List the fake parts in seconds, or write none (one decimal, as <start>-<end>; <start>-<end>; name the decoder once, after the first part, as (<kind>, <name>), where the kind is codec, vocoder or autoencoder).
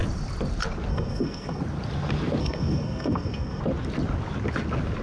0.9-1.6 (codec, SNAC); 2.4-3.6